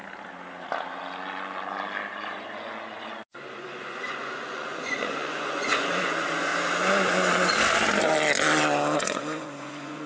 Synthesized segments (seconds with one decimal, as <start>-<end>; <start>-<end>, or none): 2.1-6.5; 9.0-10.1